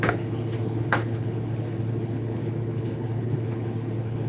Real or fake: fake